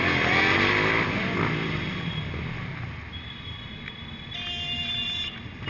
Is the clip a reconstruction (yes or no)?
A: no